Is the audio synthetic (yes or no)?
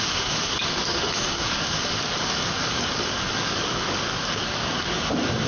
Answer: yes